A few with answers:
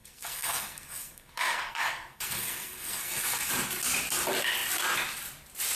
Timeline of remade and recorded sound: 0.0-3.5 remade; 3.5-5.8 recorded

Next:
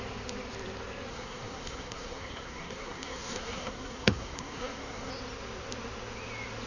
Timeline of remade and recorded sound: 0.0-1.1 recorded; 1.1-5.1 remade; 5.1-6.7 recorded

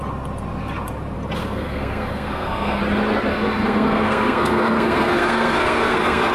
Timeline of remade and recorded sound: 0.0-1.4 recorded; 1.4-2.8 remade; 2.8-3.3 recorded; 3.3-6.3 remade

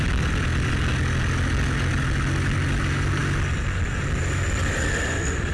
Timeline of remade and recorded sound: 0.0-5.5 recorded

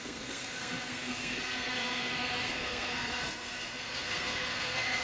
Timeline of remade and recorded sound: 0.0-5.0 remade

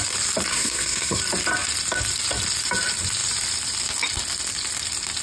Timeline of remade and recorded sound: 0.0-0.5 recorded; 0.5-1.2 remade; 1.2-5.2 recorded